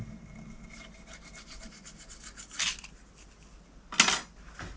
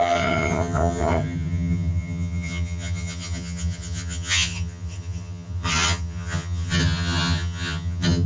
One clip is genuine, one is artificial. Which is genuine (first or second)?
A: first